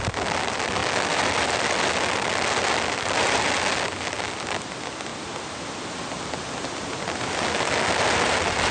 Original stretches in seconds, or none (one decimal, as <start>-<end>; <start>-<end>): 0.0-8.7